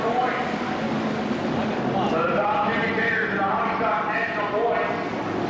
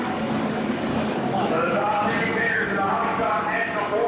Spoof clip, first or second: second